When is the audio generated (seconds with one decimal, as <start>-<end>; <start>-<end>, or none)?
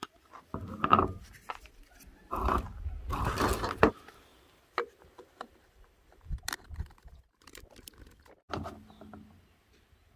4.3-7.9